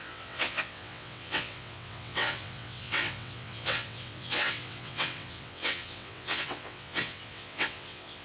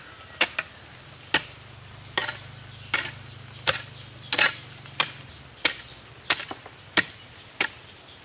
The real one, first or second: second